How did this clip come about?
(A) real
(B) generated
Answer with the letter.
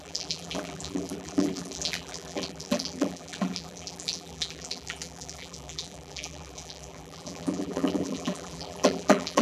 B